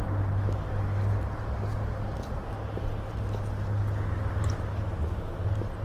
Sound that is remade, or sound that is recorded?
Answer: recorded